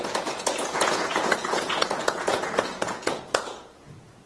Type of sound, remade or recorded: remade